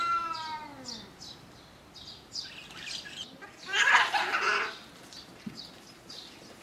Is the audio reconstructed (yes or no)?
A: no